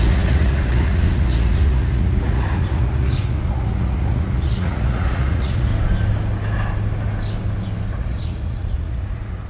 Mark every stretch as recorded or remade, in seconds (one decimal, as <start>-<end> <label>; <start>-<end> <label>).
0.0-5.7 remade; 5.7-7.9 recorded; 7.9-9.5 remade